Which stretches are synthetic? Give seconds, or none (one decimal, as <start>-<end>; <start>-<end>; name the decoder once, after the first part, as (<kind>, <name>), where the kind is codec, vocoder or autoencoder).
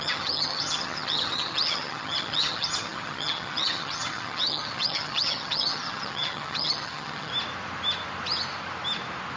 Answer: 0.0-7.3 (vocoder, HiFi-GAN)